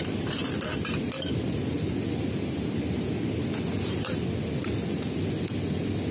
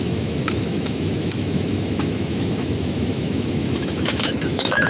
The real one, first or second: first